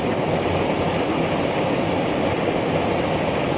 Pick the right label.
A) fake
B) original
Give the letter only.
B